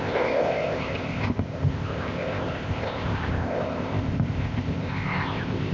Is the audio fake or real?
fake